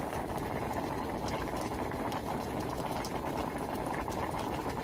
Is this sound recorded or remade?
remade